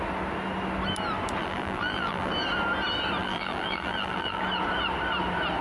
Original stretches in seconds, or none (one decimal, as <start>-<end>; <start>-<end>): 0.0-1.4; 2.3-3.2; 4.4-5.6